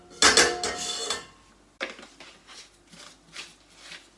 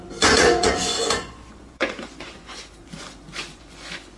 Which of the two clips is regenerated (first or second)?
second